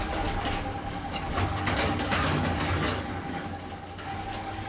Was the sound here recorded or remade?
remade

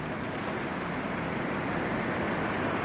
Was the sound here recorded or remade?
recorded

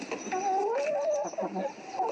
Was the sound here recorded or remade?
remade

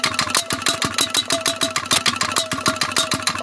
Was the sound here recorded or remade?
recorded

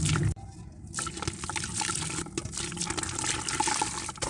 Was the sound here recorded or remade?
recorded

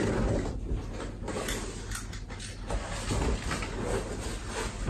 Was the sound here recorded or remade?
recorded